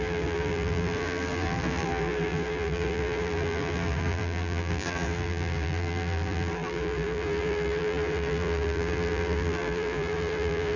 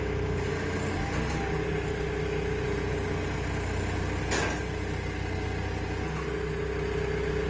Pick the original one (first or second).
second